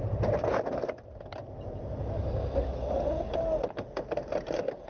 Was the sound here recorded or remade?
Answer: recorded